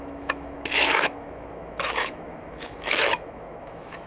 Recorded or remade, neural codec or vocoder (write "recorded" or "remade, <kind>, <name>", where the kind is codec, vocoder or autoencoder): remade, autoencoder, DAC-VAE